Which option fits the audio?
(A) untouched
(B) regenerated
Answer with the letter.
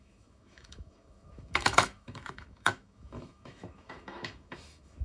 B